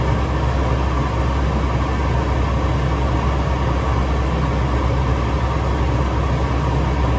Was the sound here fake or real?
real